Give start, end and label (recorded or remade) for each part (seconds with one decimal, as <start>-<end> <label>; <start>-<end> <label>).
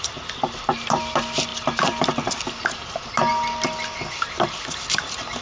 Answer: 0.0-5.4 recorded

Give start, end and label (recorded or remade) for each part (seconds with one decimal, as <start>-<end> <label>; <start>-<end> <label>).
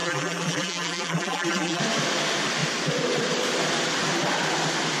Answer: 0.0-1.8 remade; 1.8-5.0 recorded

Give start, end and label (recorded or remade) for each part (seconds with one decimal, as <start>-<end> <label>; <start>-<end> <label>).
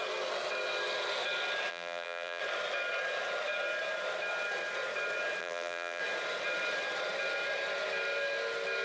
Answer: 0.0-1.7 recorded; 1.7-2.4 remade; 2.4-5.4 recorded; 5.4-6.0 remade; 6.0-8.8 recorded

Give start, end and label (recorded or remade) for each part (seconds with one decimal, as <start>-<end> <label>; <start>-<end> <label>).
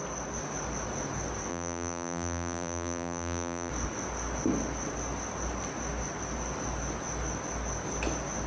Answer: 0.0-1.5 recorded; 1.5-3.7 remade; 3.7-8.5 recorded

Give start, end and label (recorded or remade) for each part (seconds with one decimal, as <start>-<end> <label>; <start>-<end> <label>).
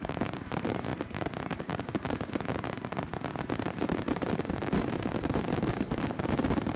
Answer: 0.0-0.9 remade; 0.9-3.6 recorded; 3.6-6.8 remade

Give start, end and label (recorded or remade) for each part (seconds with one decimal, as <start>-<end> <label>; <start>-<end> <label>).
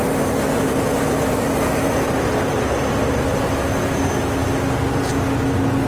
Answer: 0.0-3.5 remade; 3.5-5.9 recorded